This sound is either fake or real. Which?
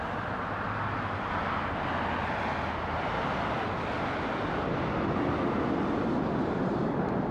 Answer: real